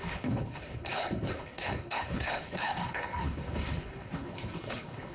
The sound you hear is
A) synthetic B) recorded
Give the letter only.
A